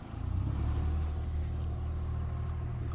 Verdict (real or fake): real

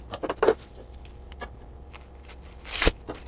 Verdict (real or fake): fake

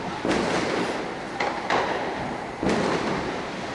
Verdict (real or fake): real